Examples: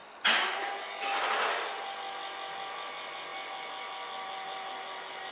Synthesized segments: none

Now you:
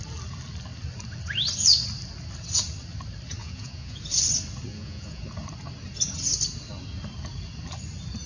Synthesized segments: 3.4-4.0 (vocoder, Vocos); 4.7-5.2

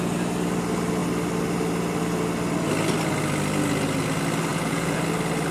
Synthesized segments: 4.5-5.0 (vocoder, Vocos)

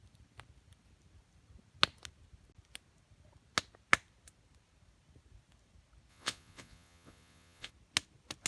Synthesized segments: 6.1-7.7 (vocoder, Vocos)

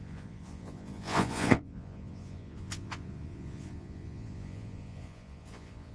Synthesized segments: 0.0-5.9 (vocoder, Vocos)

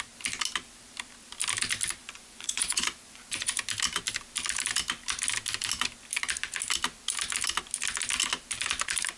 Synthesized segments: 2.0-3.5 (vocoder, Vocos)